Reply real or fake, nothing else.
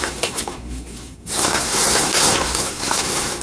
fake